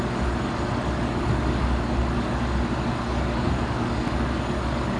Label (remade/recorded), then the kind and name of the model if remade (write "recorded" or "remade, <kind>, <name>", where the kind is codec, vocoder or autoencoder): remade, codec, DAC